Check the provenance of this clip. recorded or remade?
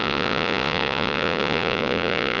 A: remade